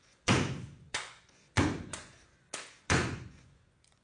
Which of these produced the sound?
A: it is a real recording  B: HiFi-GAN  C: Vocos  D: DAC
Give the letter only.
C